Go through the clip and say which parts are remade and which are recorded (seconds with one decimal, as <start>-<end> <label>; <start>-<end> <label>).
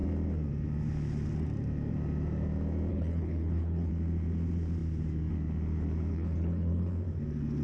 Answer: 0.0-2.9 recorded; 2.9-3.9 remade; 3.9-6.1 recorded; 6.1-6.9 remade; 6.9-7.6 recorded